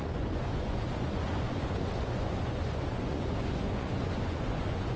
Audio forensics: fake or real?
fake